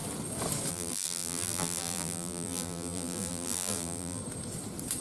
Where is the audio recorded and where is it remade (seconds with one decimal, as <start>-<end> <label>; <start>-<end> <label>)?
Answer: 0.0-0.7 recorded; 0.7-4.2 remade; 4.2-5.0 recorded